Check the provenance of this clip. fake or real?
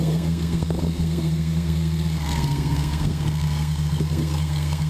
fake